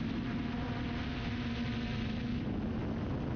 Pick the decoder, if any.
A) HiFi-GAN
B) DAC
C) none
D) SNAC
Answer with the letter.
C